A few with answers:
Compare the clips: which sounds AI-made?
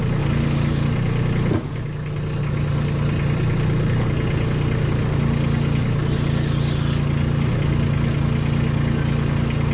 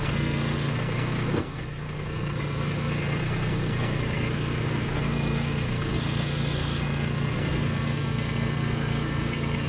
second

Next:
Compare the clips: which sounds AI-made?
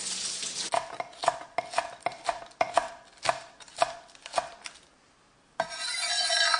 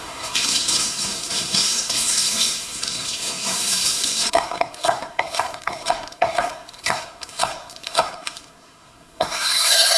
second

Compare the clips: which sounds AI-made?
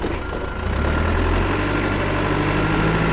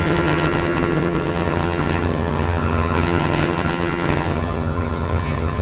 second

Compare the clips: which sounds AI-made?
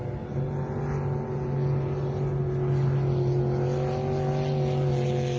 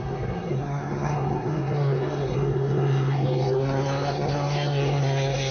second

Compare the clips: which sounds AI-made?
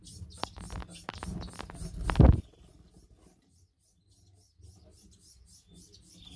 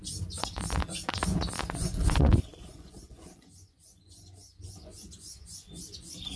second